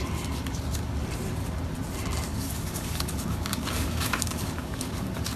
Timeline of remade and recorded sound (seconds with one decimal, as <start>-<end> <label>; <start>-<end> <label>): 0.0-2.3 recorded; 2.3-5.4 remade